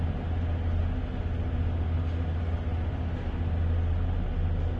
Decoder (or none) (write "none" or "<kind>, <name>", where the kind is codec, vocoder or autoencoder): none